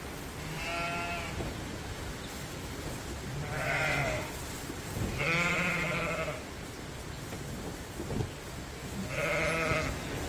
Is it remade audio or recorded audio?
recorded